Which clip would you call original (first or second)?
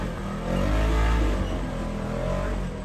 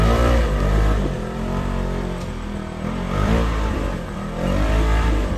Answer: first